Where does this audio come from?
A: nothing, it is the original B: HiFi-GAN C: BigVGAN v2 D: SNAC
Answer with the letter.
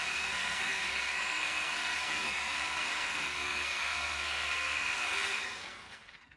D